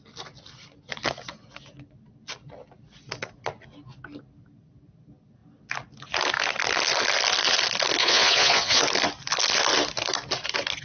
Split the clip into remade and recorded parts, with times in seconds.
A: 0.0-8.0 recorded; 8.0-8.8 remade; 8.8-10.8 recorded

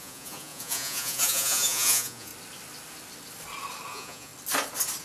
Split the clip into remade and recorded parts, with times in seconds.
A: 0.0-2.3 remade; 2.3-3.9 recorded; 3.9-4.3 remade; 4.3-5.0 recorded